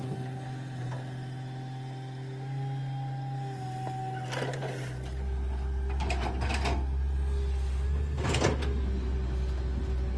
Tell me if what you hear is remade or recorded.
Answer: recorded